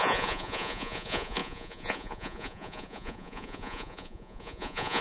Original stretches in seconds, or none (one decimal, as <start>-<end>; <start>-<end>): none